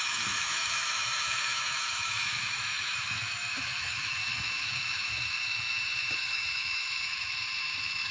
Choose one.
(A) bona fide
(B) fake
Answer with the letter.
B